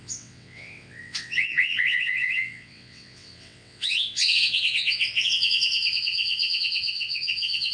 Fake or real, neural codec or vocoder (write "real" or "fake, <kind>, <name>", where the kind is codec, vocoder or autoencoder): fake, vocoder, WaveNeXt